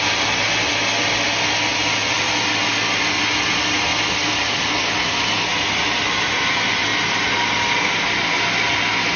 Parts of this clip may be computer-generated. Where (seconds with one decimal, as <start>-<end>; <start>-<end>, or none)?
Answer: none